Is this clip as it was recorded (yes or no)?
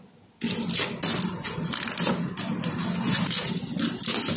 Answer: yes